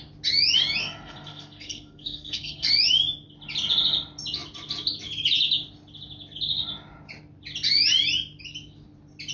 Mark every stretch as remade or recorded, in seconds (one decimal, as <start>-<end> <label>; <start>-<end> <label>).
0.0-0.8 recorded; 0.8-2.7 remade; 2.7-9.3 recorded